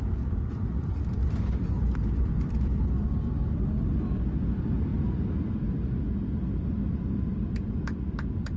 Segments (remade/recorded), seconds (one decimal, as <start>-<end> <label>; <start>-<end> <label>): 0.0-4.9 remade; 4.9-7.0 recorded; 7.0-8.6 remade